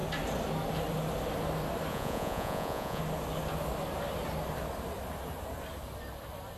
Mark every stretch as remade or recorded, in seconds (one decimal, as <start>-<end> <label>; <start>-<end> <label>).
0.0-1.9 recorded; 1.9-3.0 remade; 3.0-6.6 recorded